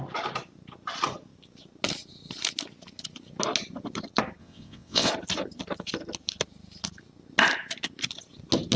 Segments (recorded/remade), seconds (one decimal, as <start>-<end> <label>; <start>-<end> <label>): 0.0-4.4 recorded; 4.4-5.1 remade; 5.1-8.8 recorded